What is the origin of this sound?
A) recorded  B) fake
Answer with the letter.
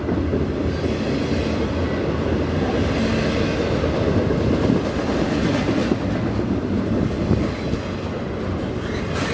A